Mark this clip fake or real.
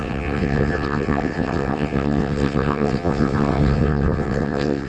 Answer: fake